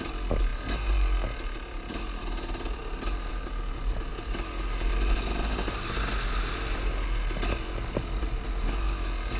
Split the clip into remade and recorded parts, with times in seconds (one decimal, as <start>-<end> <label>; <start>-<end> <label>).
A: 0.0-9.4 recorded